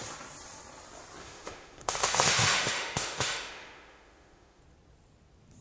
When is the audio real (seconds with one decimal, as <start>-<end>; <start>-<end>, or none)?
0.0-1.2; 4.6-5.6